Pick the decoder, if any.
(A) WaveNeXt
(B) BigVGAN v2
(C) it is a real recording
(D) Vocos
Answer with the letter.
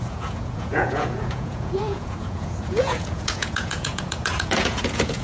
D